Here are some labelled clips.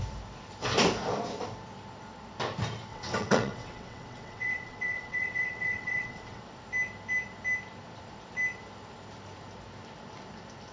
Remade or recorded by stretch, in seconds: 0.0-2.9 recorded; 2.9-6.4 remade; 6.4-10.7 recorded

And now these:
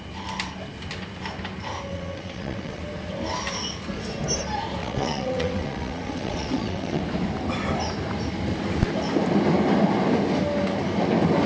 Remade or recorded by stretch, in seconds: 0.0-1.9 recorded; 1.9-2.8 remade; 2.8-4.8 recorded; 4.8-7.0 remade; 7.0-11.5 recorded